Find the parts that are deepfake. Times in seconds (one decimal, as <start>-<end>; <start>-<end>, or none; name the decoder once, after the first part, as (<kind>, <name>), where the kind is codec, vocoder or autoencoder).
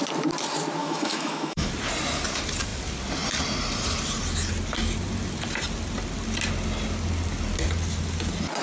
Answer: 0.8-1.7 (autoencoder, DAC-VAE)